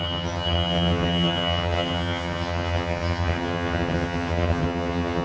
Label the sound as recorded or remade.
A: remade